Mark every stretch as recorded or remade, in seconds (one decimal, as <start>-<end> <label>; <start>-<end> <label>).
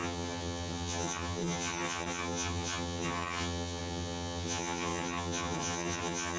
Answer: 0.0-6.4 remade